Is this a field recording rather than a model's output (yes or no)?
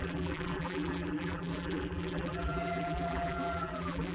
no